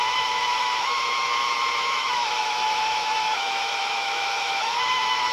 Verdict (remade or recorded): remade